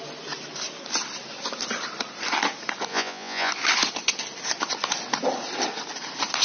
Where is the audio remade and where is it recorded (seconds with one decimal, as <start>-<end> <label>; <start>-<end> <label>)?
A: 0.0-2.9 recorded; 2.9-3.5 remade; 3.5-6.4 recorded